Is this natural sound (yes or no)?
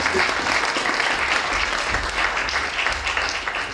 yes